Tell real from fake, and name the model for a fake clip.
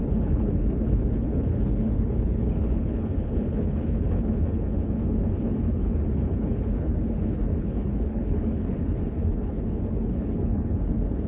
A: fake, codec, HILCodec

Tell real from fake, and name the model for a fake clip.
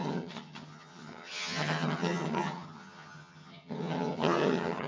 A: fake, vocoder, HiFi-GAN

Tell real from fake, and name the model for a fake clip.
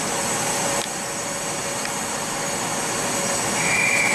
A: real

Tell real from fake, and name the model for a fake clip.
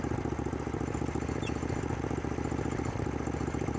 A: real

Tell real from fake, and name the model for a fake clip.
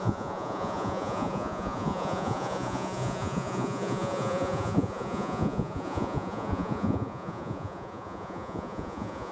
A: fake, vocoder, Vocos